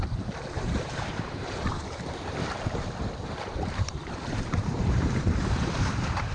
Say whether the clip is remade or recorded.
remade